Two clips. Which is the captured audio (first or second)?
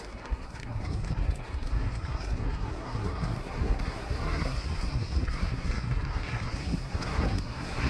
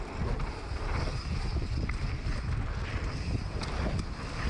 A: second